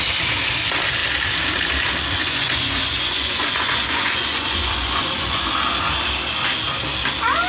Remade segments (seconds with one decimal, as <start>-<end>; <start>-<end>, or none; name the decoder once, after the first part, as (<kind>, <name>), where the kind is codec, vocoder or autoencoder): 2.2-5.5 (vocoder, Vocos)